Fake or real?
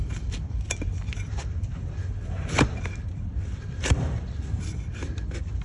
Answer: fake